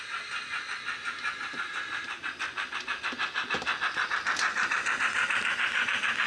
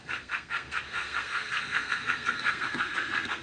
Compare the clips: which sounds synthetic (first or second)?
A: second